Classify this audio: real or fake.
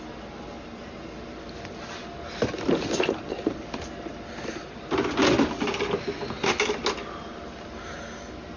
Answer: real